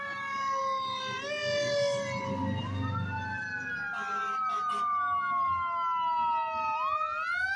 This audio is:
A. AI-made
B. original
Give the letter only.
B